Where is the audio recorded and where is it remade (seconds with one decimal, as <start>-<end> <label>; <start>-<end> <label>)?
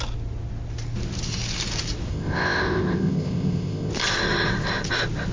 0.0-2.1 recorded; 2.1-3.9 remade; 3.9-5.3 recorded